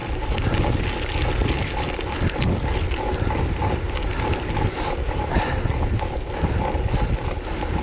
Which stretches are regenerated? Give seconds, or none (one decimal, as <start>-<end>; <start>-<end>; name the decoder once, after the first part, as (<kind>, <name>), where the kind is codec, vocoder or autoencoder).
0.0-0.9 (vocoder, BigVGAN v2)